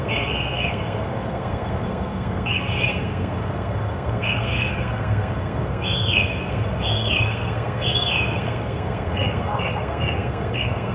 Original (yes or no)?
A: no